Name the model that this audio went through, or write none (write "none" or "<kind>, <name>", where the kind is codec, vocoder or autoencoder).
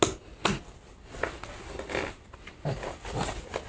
none